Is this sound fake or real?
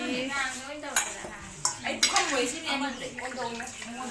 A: real